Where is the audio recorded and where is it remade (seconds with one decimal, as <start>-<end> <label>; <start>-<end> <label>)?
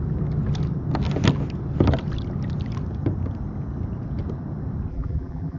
0.0-4.9 recorded; 4.9-5.6 remade